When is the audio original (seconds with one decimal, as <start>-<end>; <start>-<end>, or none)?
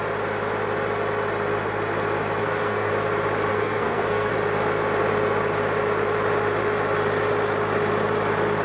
0.0-2.4; 2.9-3.5; 4.3-8.6